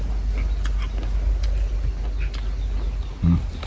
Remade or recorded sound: recorded